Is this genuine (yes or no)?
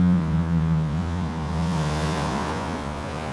no